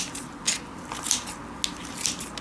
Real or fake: real